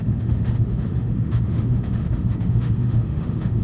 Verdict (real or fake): fake